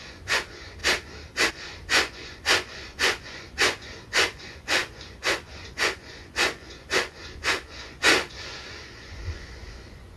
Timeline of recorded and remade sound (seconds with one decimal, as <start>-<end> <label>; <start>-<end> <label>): 0.0-0.8 remade; 0.8-1.5 recorded; 1.5-10.2 remade